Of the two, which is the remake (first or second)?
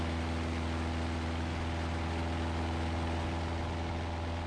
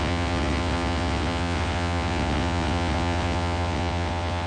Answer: second